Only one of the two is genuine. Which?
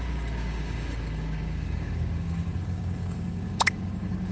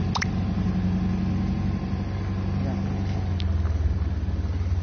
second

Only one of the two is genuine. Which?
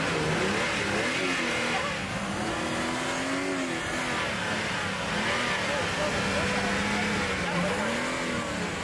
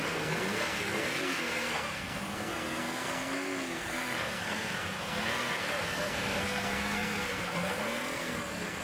first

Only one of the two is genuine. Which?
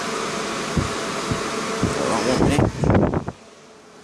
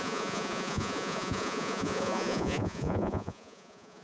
first